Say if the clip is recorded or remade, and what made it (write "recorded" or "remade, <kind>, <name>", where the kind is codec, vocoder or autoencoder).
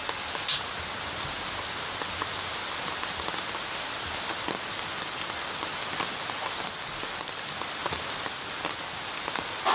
recorded